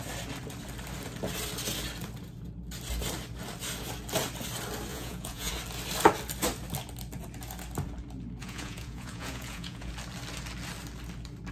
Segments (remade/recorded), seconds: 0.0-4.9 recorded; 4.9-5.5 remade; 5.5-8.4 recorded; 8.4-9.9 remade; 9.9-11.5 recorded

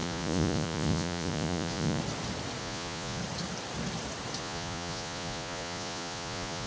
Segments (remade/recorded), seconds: 0.0-2.0 remade; 2.0-2.6 recorded; 2.6-3.2 remade; 3.2-4.4 recorded; 4.4-6.7 remade

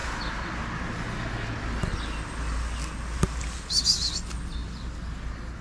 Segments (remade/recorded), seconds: 0.0-5.6 recorded

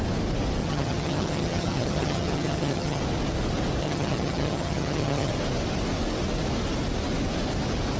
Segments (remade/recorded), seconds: 0.0-0.6 recorded; 0.6-3.0 remade; 3.0-3.8 recorded; 3.8-5.3 remade; 5.3-8.0 recorded

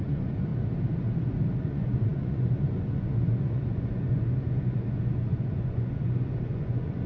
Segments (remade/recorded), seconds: 0.0-0.5 remade; 0.5-1.6 recorded; 1.6-7.1 remade

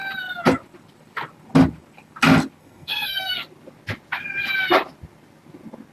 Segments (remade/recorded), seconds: 0.0-2.6 recorded; 2.6-3.4 remade; 3.4-5.9 recorded

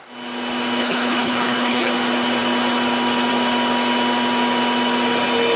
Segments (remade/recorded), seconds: 0.0-0.8 recorded; 0.8-1.9 remade; 1.9-5.6 recorded

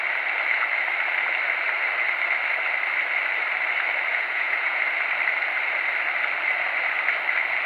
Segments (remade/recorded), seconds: 0.0-4.1 recorded; 4.1-4.8 remade; 4.8-7.7 recorded